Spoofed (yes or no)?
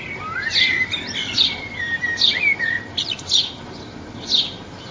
no